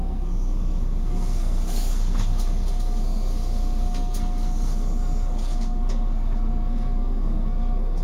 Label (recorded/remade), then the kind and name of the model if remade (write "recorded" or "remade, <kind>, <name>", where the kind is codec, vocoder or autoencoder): remade, codec, SNAC